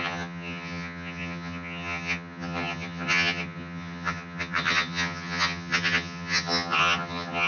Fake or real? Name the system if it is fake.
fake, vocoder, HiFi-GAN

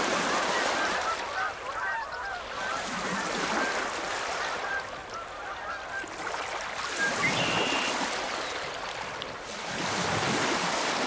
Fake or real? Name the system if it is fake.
real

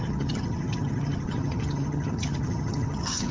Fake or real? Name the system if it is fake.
fake, vocoder, HiFi-GAN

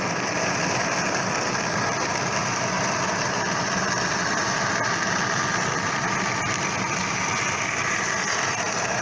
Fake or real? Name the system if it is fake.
real